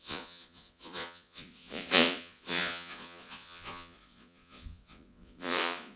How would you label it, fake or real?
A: fake